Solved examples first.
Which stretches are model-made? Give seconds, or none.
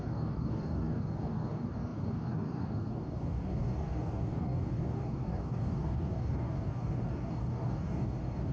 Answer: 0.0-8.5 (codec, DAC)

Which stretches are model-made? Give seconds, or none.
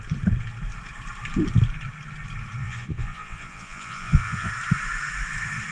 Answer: 2.6-4.5 (vocoder, Vocos)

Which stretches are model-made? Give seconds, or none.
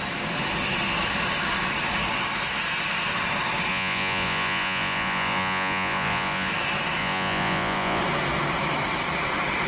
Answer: 3.7-6.5 (vocoder, Vocos); 7.0-8.0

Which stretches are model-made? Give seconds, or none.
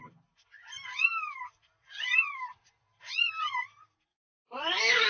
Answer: 4.1-5.1 (codec, DAC)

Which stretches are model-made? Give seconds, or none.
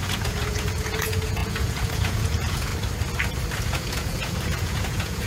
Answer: 0.0-2.7 (vocoder, Vocos); 3.7-5.3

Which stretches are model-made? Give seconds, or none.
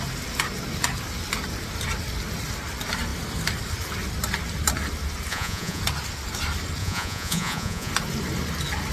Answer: 5.3-5.8 (vocoder, Vocos); 6.8-7.9